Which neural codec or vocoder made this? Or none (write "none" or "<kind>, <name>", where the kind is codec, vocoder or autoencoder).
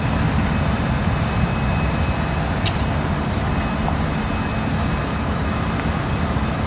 none